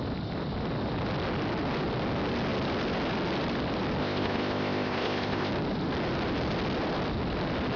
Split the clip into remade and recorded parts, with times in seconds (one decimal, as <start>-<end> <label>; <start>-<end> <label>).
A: 0.0-4.0 recorded; 4.0-5.5 remade; 5.5-7.8 recorded